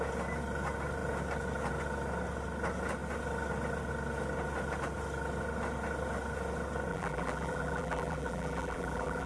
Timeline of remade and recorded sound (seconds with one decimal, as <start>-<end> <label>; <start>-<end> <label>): 0.0-6.9 recorded; 6.9-9.3 remade